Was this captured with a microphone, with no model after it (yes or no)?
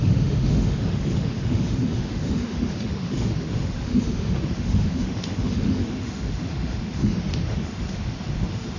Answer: no